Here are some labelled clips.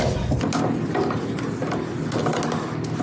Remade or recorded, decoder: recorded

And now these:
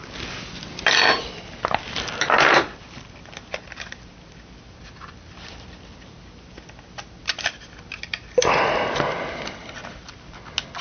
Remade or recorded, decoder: recorded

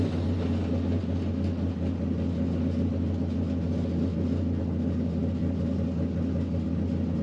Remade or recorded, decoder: recorded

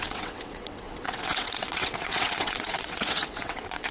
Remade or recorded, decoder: remade, vocoder, WaveNeXt